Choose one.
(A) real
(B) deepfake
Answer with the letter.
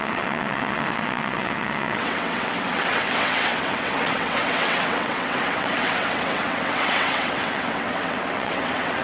B